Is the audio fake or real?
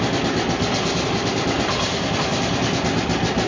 real